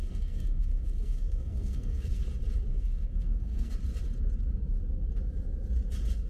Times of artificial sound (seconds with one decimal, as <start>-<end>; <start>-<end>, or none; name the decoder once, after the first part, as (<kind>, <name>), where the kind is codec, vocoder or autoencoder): 0.0-2.2 (codec, SNAC); 2.7-3.7